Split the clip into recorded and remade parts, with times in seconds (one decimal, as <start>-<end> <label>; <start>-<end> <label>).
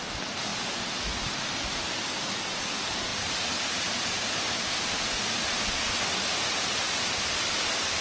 0.0-8.0 recorded